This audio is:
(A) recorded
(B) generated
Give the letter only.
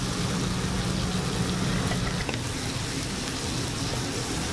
A